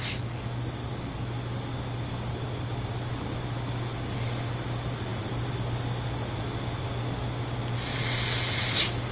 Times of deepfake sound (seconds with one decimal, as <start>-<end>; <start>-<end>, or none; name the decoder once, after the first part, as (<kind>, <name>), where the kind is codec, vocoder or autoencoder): none